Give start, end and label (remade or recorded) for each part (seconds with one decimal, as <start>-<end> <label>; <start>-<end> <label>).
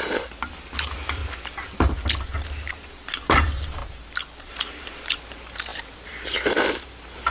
0.0-1.2 remade; 1.2-2.7 recorded; 2.7-7.3 remade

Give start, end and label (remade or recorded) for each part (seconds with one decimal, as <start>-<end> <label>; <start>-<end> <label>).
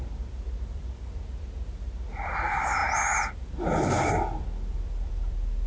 0.0-2.8 remade; 2.8-3.9 recorded; 3.9-5.7 remade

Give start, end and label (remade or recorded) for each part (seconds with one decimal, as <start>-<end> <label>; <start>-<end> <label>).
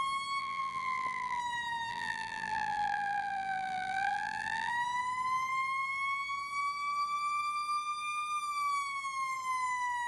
0.0-0.4 recorded; 0.4-1.4 remade; 1.4-1.9 recorded; 1.9-4.7 remade; 4.7-10.1 recorded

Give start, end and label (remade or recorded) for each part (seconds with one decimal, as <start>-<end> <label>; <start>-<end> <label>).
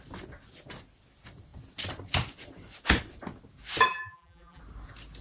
0.0-3.9 recorded; 3.9-4.6 remade; 4.6-5.2 recorded